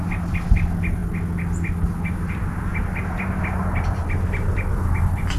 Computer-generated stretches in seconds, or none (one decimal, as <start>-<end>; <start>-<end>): none